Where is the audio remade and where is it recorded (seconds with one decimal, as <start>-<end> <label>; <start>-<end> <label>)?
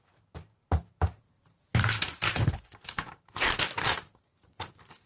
0.0-5.1 remade